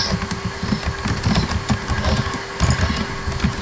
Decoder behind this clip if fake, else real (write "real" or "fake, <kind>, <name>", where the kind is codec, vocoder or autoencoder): real